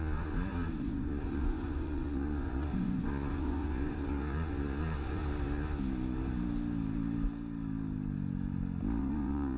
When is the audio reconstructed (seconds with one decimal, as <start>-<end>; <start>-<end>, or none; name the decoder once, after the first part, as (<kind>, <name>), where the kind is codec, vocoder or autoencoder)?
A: 0.0-5.2 (vocoder, Vocos); 9.0-9.6

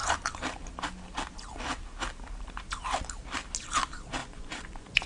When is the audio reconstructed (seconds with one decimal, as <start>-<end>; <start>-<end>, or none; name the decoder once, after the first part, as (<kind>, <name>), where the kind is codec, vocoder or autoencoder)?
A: 4.2-5.1 (vocoder, Vocos)